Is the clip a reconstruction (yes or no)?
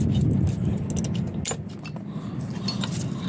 no